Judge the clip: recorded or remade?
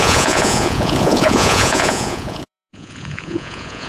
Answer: remade